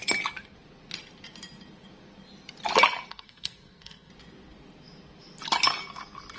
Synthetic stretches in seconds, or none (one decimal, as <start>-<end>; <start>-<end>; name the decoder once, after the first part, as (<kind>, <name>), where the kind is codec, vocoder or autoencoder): 3.1-4.1 (codec, SNAC)

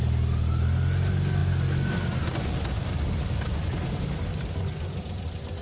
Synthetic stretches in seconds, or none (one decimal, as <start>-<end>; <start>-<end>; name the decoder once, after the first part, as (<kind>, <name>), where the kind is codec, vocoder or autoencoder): none

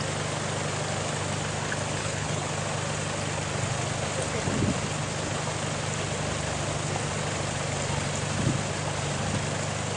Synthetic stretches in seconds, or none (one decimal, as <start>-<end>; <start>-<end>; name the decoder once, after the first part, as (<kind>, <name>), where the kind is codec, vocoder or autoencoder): 2.0-2.5 (codec, HILCodec)

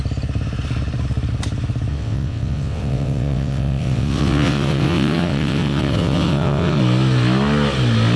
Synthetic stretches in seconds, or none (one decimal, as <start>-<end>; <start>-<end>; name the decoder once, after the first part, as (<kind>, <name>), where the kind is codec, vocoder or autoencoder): 1.9-6.8 (vocoder, WaveNeXt)

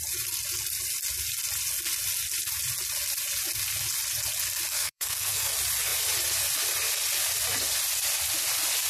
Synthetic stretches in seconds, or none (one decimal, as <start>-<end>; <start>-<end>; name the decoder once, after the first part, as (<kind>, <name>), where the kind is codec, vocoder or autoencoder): 4.7-5.5 (codec, SNAC)

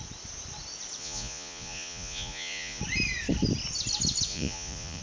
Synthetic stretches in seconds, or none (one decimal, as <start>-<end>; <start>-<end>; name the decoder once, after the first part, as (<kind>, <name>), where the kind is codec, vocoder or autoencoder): 1.0-2.8 (vocoder, Vocos); 4.3-5.0